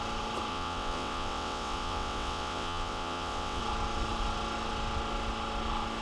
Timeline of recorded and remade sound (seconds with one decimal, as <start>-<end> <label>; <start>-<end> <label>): 0.0-0.5 recorded; 0.5-3.6 remade; 3.6-6.0 recorded